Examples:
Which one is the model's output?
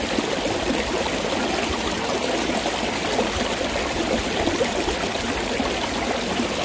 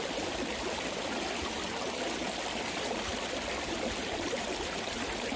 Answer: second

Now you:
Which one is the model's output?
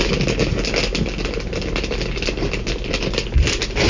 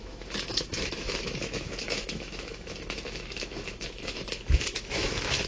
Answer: second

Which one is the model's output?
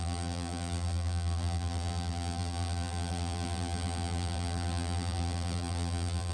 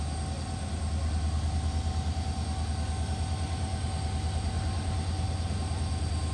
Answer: first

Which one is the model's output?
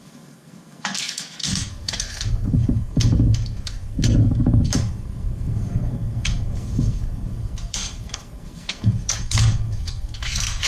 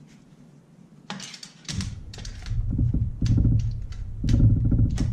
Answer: first